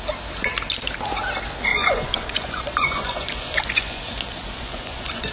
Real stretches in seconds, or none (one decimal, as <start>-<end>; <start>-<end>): 0.0-1.7